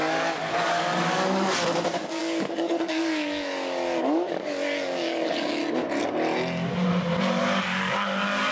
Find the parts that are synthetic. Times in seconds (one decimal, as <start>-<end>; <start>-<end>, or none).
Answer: 0.0-5.6; 7.6-8.5